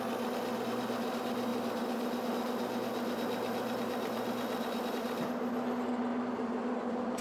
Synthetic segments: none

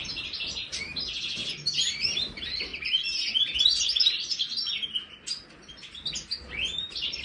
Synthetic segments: 0.0-2.7 (vocoder, BigVGAN v2); 6.8-7.2

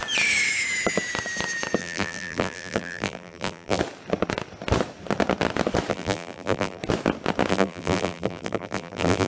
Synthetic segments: 1.8-3.8 (vocoder, BigVGAN v2); 5.9-6.8; 7.5-9.3

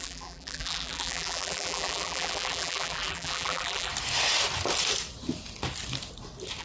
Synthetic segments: 0.0-3.9 (vocoder, BigVGAN v2)

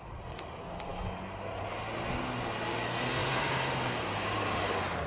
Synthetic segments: 3.2-4.6 (vocoder, BigVGAN v2)

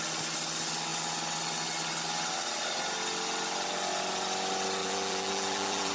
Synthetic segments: 4.8-5.9 (vocoder, BigVGAN v2)